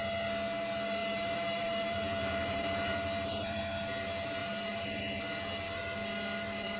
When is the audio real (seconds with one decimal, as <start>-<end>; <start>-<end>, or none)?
0.0-1.0; 3.6-4.4; 5.0-6.8